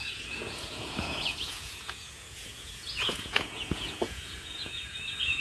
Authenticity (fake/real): fake